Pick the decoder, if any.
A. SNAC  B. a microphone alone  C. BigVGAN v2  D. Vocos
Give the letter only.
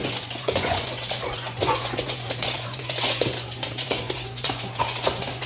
D